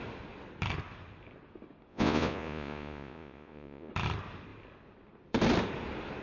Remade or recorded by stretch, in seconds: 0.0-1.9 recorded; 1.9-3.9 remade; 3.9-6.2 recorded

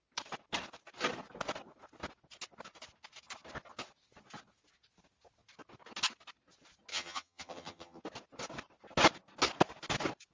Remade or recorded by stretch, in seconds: 0.0-6.9 recorded; 6.9-8.0 remade; 8.0-10.3 recorded

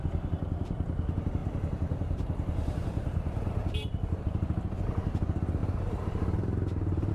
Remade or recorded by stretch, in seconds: 0.0-1.4 recorded; 1.4-4.2 remade; 4.2-5.6 recorded; 5.6-7.1 remade

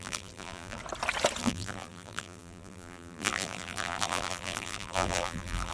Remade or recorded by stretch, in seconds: 0.0-0.8 remade; 0.8-1.4 recorded; 1.4-5.7 remade

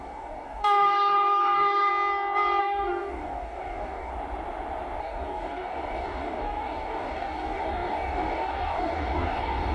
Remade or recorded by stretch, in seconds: 0.0-1.9 remade; 1.9-2.6 recorded; 2.6-4.1 remade; 4.1-5.0 recorded; 5.0-9.7 remade